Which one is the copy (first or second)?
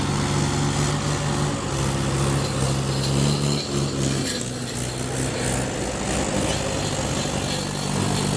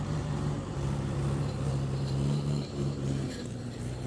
second